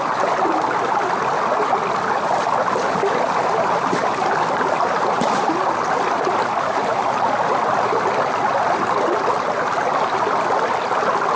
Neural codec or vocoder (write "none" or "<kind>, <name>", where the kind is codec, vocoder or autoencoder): none